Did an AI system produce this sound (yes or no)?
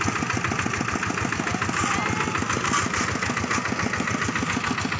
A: no